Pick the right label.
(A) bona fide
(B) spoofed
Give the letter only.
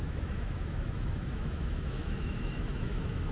B